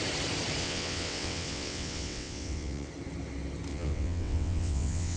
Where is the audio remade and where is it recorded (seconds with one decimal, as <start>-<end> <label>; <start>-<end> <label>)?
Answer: 0.0-0.6 recorded; 0.6-2.9 remade; 2.9-3.7 recorded; 3.7-5.2 remade